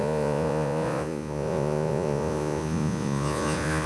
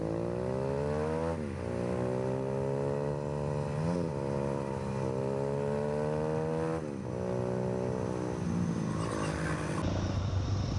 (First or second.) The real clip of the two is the second